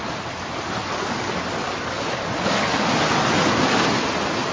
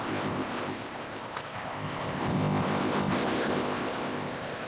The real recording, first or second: first